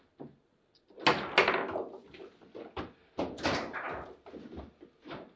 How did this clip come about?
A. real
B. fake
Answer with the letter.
A